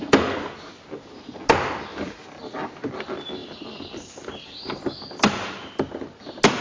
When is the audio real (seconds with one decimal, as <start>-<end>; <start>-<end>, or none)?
0.0-3.4; 4.8-6.6